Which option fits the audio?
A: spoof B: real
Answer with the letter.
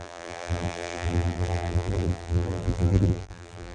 A